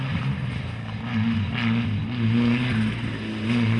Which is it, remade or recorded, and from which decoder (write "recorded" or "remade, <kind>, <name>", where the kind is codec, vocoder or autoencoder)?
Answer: recorded